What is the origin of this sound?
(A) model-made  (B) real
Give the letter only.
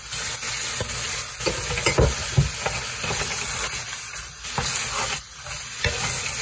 B